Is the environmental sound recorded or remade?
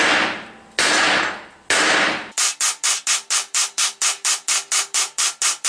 recorded